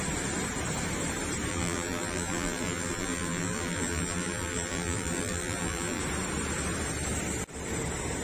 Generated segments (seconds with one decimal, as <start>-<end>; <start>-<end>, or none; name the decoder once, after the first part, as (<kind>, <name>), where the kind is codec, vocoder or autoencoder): 1.5-6.0 (vocoder, BigVGAN v2)